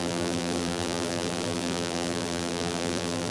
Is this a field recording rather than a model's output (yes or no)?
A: no